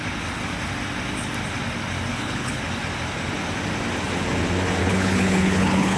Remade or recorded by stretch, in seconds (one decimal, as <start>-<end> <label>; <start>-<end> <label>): 0.0-2.1 recorded; 2.1-2.6 remade; 2.6-4.8 recorded; 4.8-6.0 remade

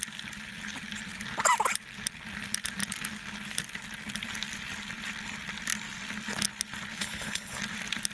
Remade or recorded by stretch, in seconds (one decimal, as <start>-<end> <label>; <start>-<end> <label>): 0.0-7.0 recorded; 7.0-7.6 remade; 7.6-8.1 recorded

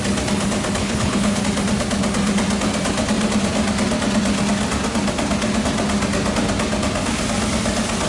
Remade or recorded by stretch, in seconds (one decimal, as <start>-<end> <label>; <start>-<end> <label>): 0.0-0.8 recorded; 0.8-1.4 remade; 1.4-8.1 recorded

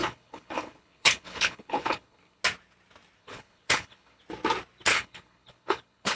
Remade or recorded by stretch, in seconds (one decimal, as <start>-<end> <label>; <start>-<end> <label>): 0.0-2.4 remade; 2.4-3.2 recorded; 3.2-4.2 remade; 4.2-4.9 recorded; 4.9-6.2 remade

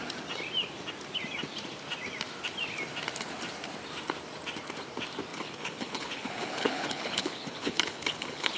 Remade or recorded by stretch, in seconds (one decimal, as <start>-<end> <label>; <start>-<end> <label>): 0.0-5.3 recorded; 5.3-8.6 remade